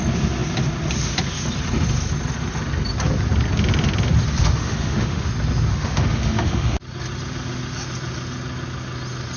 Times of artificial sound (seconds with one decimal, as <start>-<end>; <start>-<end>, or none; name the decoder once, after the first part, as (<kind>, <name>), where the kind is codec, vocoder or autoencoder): 4.4-5.3 (autoencoder, DAC-VAE); 5.7-6.8